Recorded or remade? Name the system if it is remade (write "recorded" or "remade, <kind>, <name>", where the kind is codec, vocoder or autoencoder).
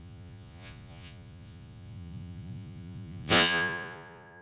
remade, vocoder, Vocos